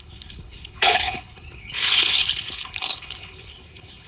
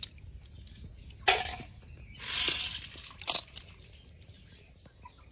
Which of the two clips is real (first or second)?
second